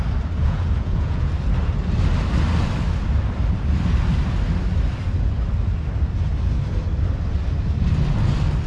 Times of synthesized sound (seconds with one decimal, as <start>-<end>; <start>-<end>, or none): 0.4-1.3